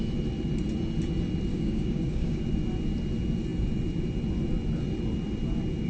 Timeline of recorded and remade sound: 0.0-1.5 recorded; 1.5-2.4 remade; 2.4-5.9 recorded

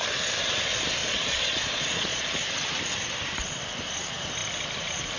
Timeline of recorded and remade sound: 0.0-1.0 recorded; 1.0-2.3 remade; 2.3-5.2 recorded

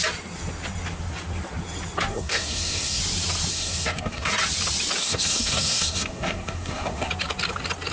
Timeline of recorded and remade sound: 0.0-2.1 recorded; 2.1-3.0 remade; 3.0-3.5 recorded; 3.5-4.3 remade; 4.3-5.0 recorded; 5.0-7.1 remade; 7.1-7.9 recorded